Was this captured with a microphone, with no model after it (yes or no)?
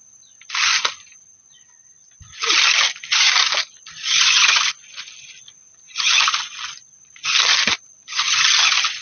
no